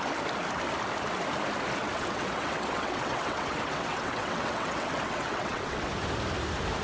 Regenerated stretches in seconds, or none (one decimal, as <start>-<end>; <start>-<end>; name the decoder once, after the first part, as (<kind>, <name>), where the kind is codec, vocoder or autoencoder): 1.8-5.9 (vocoder, WaveNeXt)

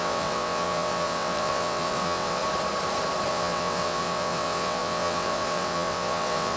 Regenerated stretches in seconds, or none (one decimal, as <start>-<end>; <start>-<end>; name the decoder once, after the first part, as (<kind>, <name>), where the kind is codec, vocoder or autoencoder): 0.0-2.4 (vocoder, WaveNeXt); 3.3-6.6

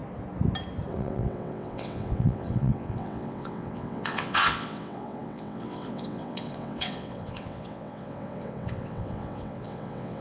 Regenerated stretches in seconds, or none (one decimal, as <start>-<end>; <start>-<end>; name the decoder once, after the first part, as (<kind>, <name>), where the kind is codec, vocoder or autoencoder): 0.9-10.2 (vocoder, WaveNeXt)

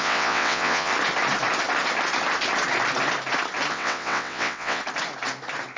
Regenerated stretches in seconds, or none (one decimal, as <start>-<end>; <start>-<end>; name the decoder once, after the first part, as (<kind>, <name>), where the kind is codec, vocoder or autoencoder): 0.0-0.9 (vocoder, WaveNeXt); 3.7-4.8

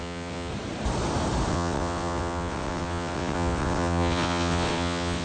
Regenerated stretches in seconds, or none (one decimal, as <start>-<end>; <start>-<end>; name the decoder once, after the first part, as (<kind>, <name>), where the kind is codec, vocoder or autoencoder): 0.0-0.5 (vocoder, WaveNeXt); 1.5-5.2

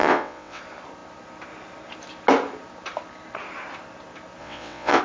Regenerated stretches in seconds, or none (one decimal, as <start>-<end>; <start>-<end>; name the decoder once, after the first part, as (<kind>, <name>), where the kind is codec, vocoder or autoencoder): 0.0-0.6 (vocoder, WaveNeXt); 4.4-5.0

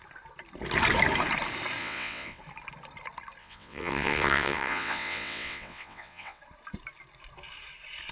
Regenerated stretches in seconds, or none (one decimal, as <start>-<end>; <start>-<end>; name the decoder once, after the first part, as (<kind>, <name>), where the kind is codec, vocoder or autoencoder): 1.8-2.4 (vocoder, WaveNeXt); 3.4-6.4

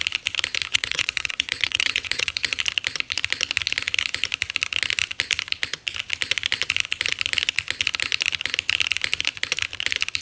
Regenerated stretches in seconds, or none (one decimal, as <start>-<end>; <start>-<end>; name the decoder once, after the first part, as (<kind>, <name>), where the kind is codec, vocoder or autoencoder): 0.7-2.6 (vocoder, WaveNeXt)